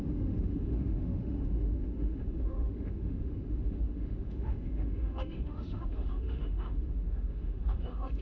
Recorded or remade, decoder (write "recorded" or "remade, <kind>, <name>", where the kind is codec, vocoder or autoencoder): remade, autoencoder, DAC-VAE